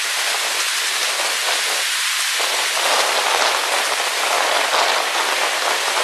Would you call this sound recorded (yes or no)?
yes